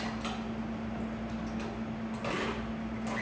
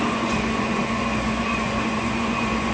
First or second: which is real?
first